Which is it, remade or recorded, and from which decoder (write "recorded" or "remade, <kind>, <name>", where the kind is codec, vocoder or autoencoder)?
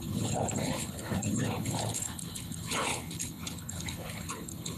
remade, codec, HILCodec